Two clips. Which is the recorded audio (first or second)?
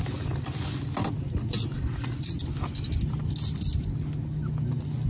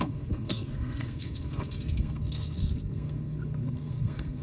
first